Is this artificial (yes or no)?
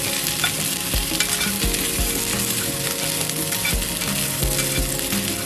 no